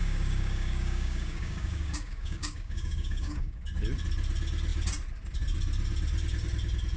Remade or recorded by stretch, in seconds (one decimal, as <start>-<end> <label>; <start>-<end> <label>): 0.0-3.6 remade; 3.6-7.0 recorded